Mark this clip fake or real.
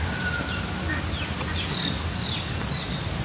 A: real